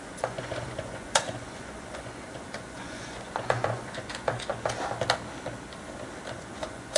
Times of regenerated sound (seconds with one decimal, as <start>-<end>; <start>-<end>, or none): 0.0-4.5; 6.3-7.0